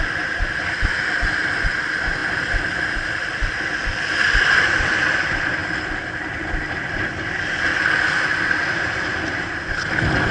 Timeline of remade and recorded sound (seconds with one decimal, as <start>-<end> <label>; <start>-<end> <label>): 0.0-10.3 recorded